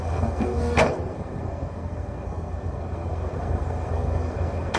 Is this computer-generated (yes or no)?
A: yes